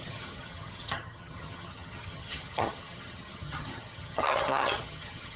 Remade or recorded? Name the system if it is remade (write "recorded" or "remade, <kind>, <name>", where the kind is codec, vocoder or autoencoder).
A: remade, vocoder, HiFi-GAN